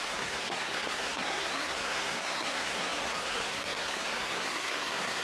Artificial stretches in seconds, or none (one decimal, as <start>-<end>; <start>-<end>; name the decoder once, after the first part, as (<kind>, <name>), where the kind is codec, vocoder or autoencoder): 0.0-5.2 (codec, SNAC)